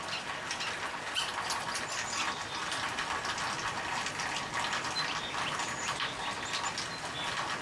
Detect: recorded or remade recorded